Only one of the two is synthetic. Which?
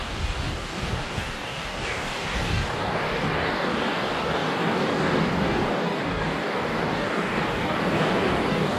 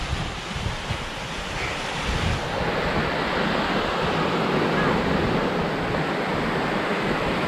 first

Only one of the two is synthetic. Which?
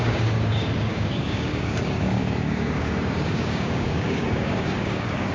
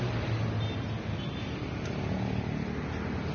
first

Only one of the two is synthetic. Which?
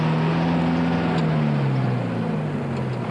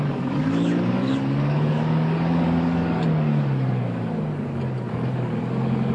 second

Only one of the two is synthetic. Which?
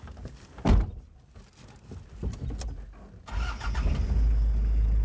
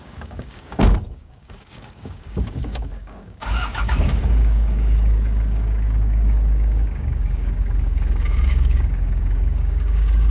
second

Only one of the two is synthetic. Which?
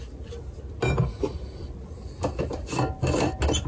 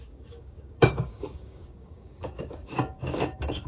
second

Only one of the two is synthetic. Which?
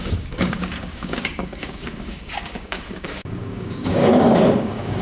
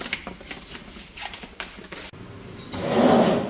first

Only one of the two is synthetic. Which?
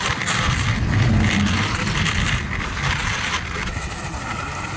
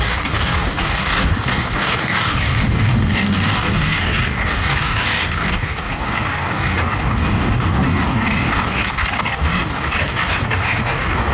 second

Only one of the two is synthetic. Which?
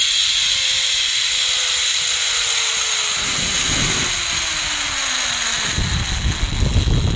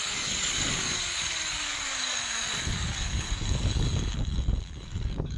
second